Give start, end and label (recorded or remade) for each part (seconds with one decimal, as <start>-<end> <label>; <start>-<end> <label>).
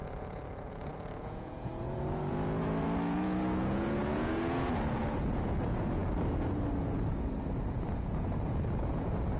0.0-9.4 remade